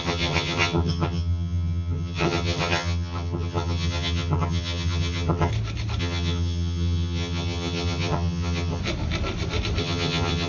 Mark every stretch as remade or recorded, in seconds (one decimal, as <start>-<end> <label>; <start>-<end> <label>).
0.0-5.5 remade; 5.5-6.0 recorded; 6.0-8.8 remade; 8.8-9.8 recorded; 9.8-10.5 remade